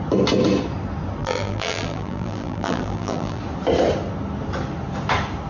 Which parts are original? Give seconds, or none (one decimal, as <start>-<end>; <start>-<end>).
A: 0.0-1.2; 3.4-5.5